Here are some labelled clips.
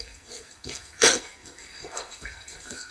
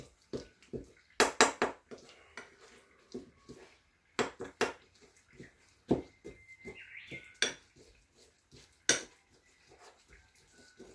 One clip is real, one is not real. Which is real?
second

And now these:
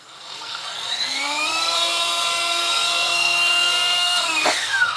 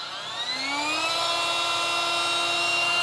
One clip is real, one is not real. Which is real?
second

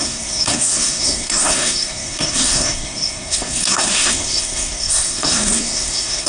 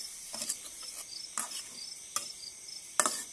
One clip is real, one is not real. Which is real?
second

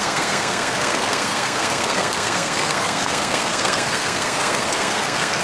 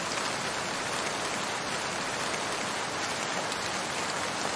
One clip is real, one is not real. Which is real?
second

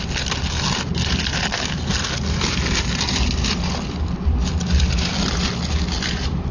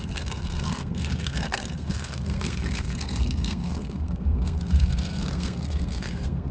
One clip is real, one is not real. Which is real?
first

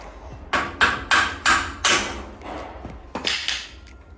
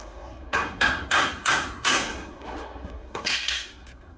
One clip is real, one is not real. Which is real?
first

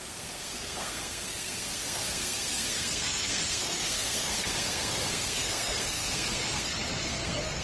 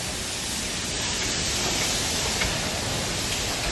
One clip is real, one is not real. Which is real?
second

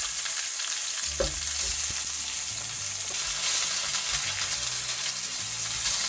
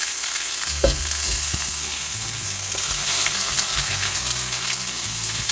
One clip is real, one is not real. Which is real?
first